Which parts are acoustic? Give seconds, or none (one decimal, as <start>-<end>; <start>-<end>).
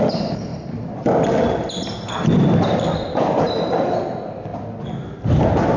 0.0-5.8